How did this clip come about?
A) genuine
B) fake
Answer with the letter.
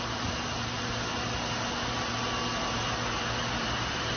A